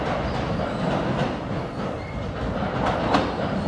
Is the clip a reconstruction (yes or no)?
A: no